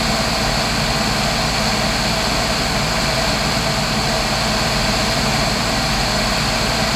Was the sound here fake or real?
real